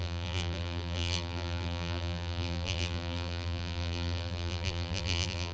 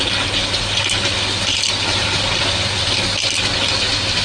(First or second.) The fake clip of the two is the first